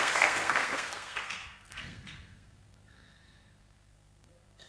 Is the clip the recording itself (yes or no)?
no